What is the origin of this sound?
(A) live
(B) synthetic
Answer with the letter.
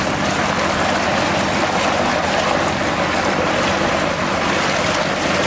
A